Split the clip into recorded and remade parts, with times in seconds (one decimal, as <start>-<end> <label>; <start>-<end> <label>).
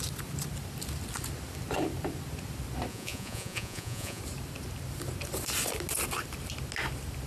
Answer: 0.0-2.9 recorded; 2.9-4.2 remade; 4.2-7.3 recorded